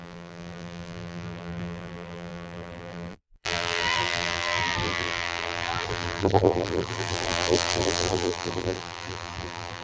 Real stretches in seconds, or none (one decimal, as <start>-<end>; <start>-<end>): none